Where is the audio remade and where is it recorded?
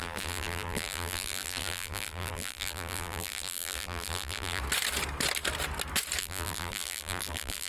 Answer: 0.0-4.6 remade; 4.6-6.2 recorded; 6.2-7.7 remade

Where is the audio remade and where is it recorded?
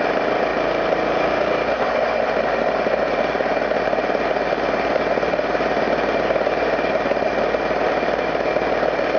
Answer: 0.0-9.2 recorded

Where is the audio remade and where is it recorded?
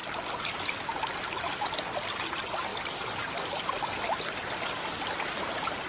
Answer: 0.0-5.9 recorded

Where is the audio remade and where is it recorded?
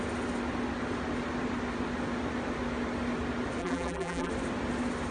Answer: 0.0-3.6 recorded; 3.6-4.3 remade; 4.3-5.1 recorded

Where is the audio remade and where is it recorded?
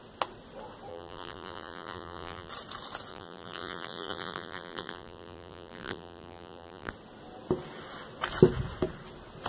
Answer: 0.0-0.9 recorded; 0.9-2.5 remade; 2.5-3.1 recorded; 3.1-6.9 remade; 6.9-9.5 recorded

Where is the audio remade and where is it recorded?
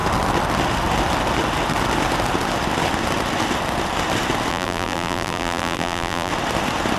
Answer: 0.0-4.5 recorded; 4.5-6.3 remade; 6.3-7.0 recorded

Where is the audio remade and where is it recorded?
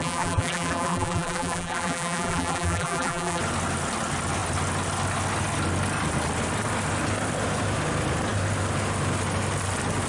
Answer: 0.0-3.4 remade; 3.4-10.1 recorded